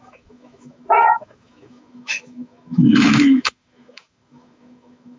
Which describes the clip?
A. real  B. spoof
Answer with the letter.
B